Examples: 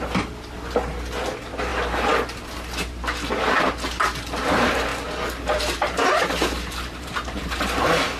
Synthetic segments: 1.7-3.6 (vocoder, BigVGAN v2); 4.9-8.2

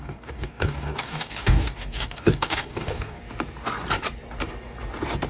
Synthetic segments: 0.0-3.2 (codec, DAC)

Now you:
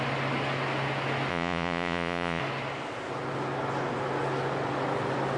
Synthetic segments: 1.3-2.4 (vocoder, Vocos)

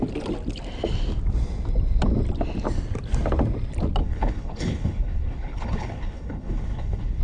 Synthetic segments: 4.0-7.2 (codec, HILCodec)

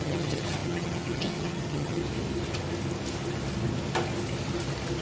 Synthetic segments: 0.0-2.0 (vocoder, HiFi-GAN)

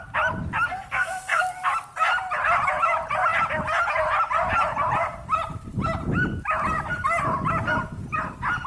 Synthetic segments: 0.7-1.4 (codec, SNAC)

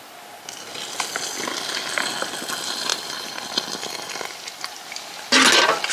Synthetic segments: 2.9-5.1 (vocoder, BigVGAN v2)

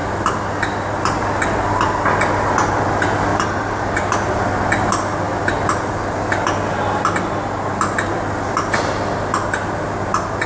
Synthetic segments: 3.3-4.1 (vocoder, BigVGAN v2)